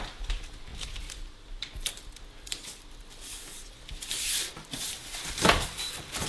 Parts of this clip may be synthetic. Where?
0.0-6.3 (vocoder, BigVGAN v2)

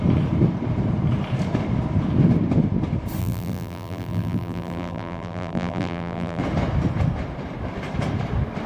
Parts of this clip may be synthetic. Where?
3.2-6.4 (vocoder, BigVGAN v2)

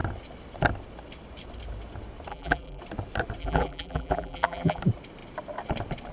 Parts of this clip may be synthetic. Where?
2.3-2.8 (vocoder, BigVGAN v2); 3.4-4.8

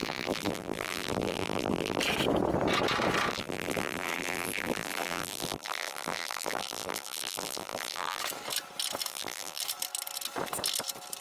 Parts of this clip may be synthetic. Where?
0.0-2.0 (vocoder, BigVGAN v2); 3.3-8.2; 9.1-9.6

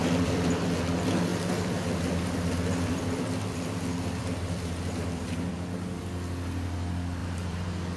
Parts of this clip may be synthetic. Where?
0.0-0.6 (vocoder, BigVGAN v2); 1.3-6.0; 7.2-8.0

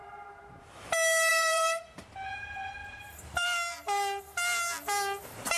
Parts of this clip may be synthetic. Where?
0.0-0.6 (vocoder, BigVGAN v2); 1.3-1.8; 2.8-4.2